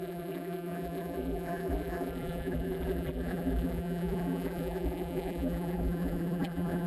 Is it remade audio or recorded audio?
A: remade